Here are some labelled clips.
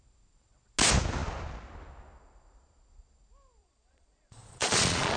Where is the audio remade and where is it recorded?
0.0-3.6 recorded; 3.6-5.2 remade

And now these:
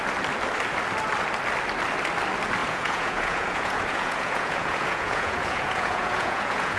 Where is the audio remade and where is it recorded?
0.0-2.6 recorded; 2.6-6.8 remade

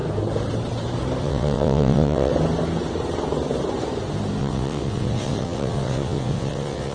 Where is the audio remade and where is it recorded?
0.0-1.2 recorded; 1.2-2.3 remade; 2.3-4.4 recorded; 4.4-6.9 remade

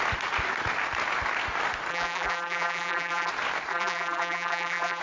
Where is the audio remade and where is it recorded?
0.0-1.9 recorded; 1.9-3.3 remade; 3.3-3.7 recorded; 3.7-5.0 remade

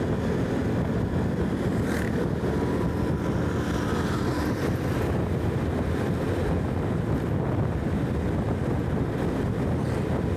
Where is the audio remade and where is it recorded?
0.0-10.4 recorded